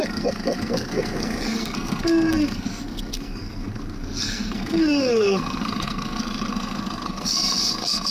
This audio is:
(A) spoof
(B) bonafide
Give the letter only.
A